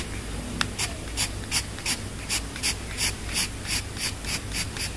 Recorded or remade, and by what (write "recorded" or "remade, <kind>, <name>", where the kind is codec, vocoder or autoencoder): recorded